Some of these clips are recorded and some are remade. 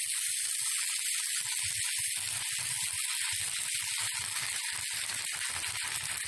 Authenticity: recorded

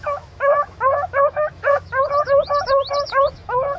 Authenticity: remade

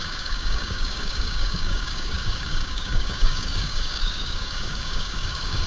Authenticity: remade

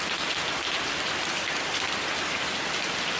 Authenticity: recorded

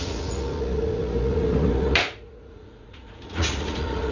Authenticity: remade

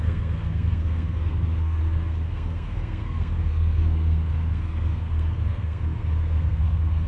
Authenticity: remade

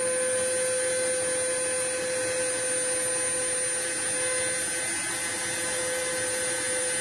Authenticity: recorded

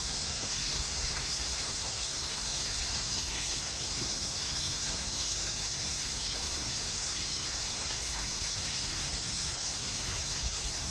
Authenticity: remade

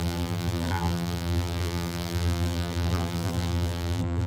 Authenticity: remade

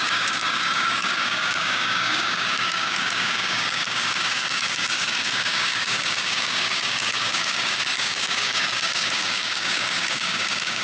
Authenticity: remade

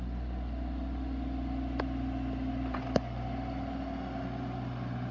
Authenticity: recorded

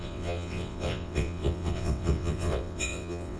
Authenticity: remade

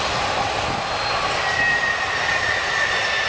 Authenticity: recorded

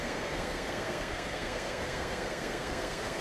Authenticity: remade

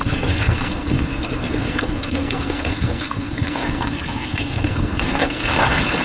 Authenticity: remade